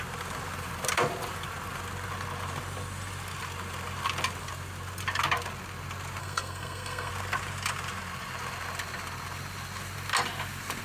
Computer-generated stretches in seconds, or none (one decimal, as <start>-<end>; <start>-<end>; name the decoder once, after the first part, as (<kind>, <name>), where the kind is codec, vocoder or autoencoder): 6.2-7.1 (codec, SNAC)